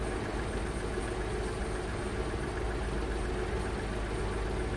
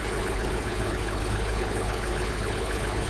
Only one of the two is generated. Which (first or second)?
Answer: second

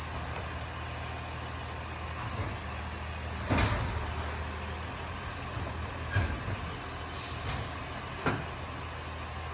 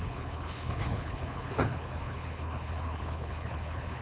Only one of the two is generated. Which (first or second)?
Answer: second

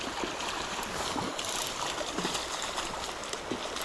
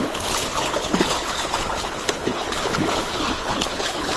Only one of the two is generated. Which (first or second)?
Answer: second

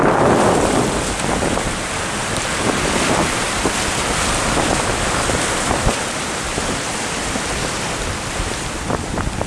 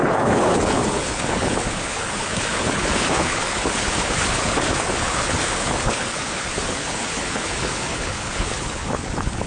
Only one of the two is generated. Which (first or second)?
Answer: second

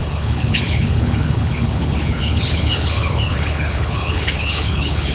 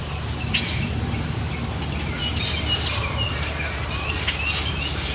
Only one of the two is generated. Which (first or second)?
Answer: first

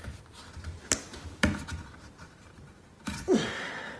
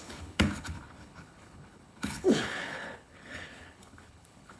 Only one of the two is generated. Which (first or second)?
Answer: second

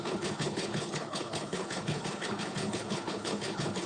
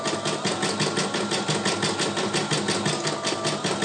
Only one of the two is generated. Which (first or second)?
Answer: first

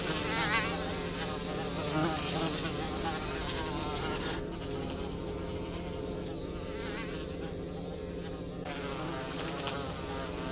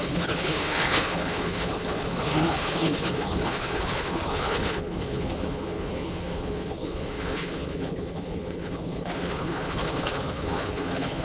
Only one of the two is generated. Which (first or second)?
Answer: second